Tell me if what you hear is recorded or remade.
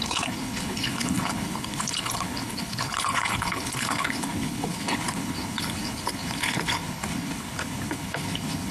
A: remade